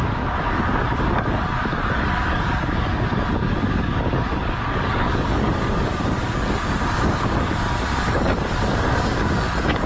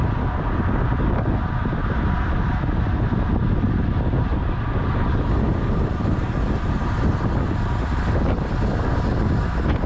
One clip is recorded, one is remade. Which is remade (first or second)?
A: first